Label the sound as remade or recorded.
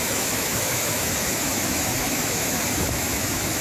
remade